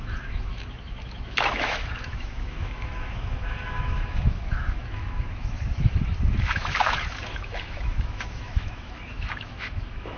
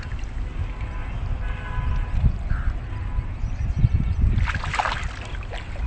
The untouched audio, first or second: second